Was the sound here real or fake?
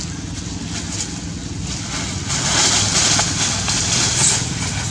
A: real